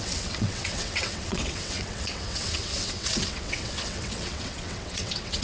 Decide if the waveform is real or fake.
fake